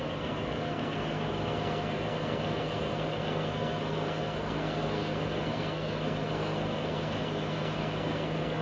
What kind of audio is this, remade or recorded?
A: remade